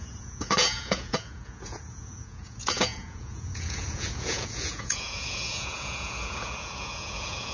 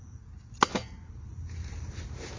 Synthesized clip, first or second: first